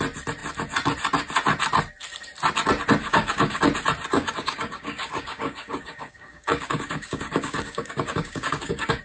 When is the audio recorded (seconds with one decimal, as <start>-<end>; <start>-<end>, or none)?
0.0-3.0; 3.6-4.1